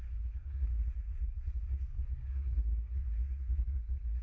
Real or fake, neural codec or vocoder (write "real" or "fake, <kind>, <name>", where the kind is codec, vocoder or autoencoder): fake, codec, SNAC